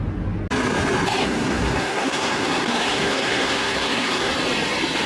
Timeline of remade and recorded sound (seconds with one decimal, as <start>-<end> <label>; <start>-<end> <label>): 0.0-1.2 recorded; 1.2-4.3 remade; 4.3-5.1 recorded

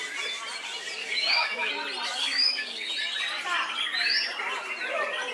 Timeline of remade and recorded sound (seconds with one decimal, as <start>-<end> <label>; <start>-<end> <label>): 0.0-1.0 recorded; 1.0-1.7 remade; 1.7-2.2 recorded; 2.2-2.9 remade; 2.9-5.3 recorded

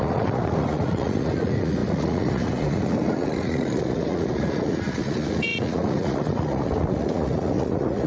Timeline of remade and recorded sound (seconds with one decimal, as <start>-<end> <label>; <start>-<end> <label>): 0.0-8.1 remade

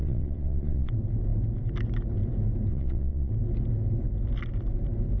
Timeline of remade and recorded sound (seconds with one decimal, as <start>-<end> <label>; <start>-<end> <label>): 0.0-0.9 remade; 0.9-2.7 recorded; 2.7-3.3 remade; 3.3-5.2 recorded